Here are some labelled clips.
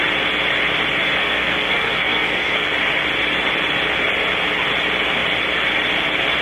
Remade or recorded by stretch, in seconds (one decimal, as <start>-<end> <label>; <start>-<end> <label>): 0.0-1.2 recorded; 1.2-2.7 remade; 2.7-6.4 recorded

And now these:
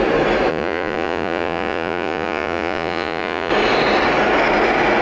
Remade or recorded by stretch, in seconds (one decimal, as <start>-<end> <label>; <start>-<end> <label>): 0.0-0.5 recorded; 0.5-3.5 remade; 3.5-5.0 recorded

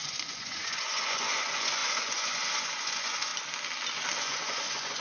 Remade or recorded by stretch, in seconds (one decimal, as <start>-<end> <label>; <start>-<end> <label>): 0.0-3.3 remade; 3.3-4.2 recorded; 4.2-5.0 remade

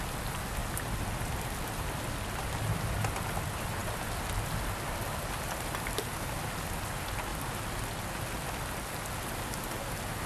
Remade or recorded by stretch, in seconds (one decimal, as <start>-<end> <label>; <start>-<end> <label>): 0.0-10.3 recorded

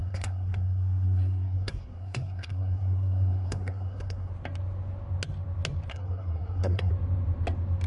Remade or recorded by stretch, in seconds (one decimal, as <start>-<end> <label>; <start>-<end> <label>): 0.0-4.3 remade; 4.3-5.9 recorded; 5.9-6.9 remade; 6.9-7.9 recorded